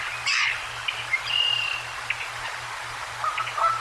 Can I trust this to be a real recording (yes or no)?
no